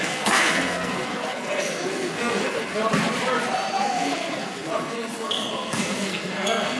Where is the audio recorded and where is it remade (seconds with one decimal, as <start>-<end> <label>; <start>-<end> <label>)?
0.0-2.8 remade; 2.8-3.8 recorded; 3.8-6.8 remade